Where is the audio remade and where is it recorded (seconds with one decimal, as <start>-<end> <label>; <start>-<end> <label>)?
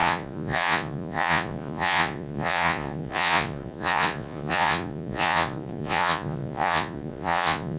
0.0-7.8 remade